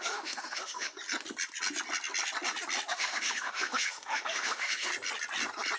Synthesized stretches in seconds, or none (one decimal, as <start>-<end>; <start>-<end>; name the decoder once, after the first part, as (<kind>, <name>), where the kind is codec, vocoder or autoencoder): 0.0-0.9 (autoencoder, DAC-VAE); 2.9-4.9